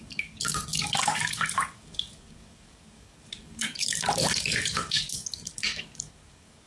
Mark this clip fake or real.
fake